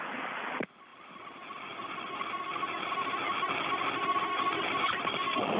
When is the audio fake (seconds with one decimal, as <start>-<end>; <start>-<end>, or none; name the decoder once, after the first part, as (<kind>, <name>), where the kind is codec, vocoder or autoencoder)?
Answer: none